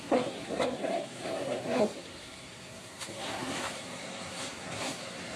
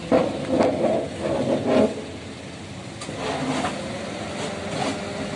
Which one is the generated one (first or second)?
first